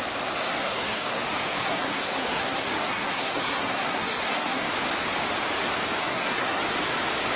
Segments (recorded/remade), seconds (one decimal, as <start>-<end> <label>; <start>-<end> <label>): 0.0-0.6 recorded; 0.6-1.2 remade; 1.2-1.6 recorded; 1.6-4.7 remade; 4.7-6.0 recorded; 6.0-6.6 remade; 6.6-7.4 recorded